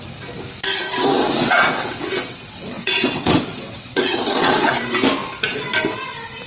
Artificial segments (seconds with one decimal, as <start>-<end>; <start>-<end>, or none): 1.2-4.7